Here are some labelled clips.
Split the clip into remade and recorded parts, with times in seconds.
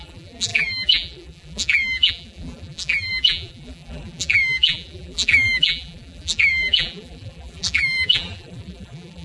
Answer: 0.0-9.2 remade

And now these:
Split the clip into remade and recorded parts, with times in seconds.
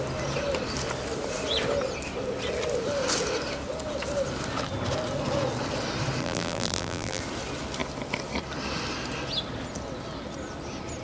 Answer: 0.0-6.2 recorded; 6.2-7.2 remade; 7.2-11.0 recorded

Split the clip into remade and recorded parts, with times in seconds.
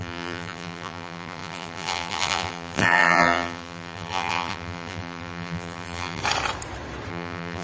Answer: 0.0-6.2 remade; 6.2-7.1 recorded; 7.1-7.6 remade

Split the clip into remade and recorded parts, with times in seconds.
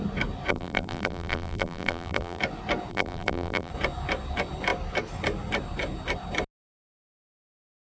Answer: 0.0-0.5 recorded; 0.5-2.4 remade; 2.4-2.9 recorded; 2.9-3.7 remade; 3.7-7.9 recorded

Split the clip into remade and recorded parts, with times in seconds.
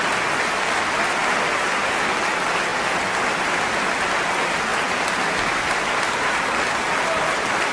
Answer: 0.0-7.7 recorded